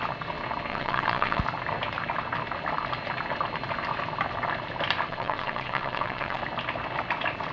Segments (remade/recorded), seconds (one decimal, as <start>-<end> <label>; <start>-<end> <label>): 0.0-0.7 recorded; 0.7-1.4 remade; 1.4-5.1 recorded; 5.1-6.4 remade; 6.4-7.5 recorded